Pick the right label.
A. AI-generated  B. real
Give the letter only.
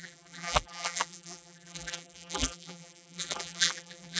A